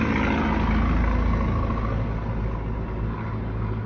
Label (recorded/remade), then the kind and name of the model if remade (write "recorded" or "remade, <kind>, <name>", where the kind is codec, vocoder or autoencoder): recorded